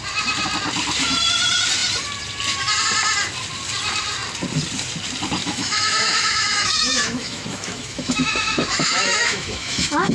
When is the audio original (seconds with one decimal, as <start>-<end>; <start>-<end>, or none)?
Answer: 0.0-5.4